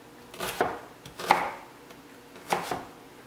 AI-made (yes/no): no